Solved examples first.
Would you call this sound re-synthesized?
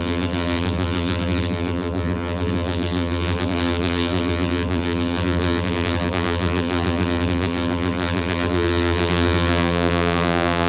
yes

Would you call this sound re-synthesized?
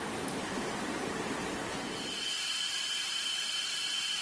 yes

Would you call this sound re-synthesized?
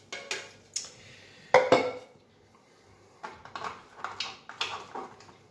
no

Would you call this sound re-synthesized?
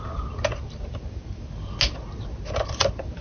no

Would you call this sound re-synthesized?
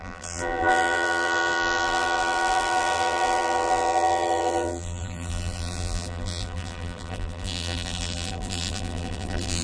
yes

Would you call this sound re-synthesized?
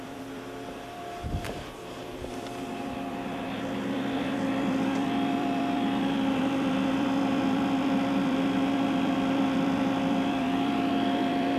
yes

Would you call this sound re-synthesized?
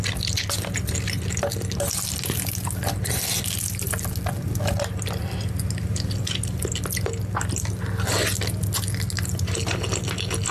no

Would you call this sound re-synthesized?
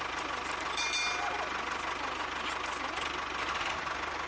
no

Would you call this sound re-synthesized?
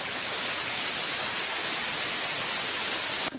no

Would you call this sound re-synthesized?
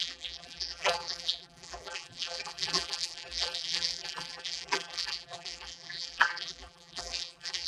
yes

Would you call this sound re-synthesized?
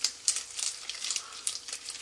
no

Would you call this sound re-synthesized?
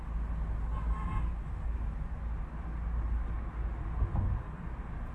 no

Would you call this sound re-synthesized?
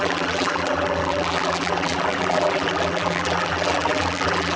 yes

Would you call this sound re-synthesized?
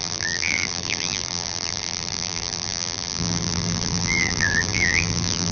yes